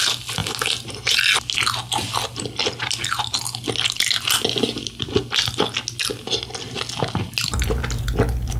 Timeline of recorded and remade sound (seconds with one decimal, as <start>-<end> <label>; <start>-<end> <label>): 0.0-8.6 recorded